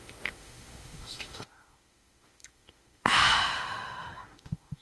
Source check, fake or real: fake